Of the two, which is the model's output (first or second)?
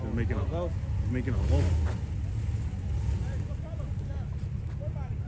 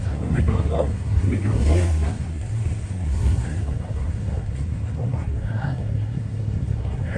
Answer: second